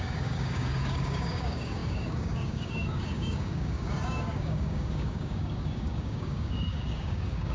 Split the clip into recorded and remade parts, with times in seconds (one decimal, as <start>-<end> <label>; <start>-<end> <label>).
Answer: 0.0-7.5 remade